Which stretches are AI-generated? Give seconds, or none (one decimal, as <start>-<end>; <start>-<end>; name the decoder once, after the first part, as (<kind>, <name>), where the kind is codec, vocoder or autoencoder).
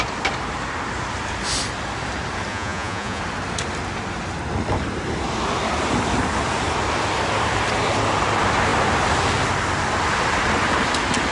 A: 2.5-3.2 (vocoder, Vocos)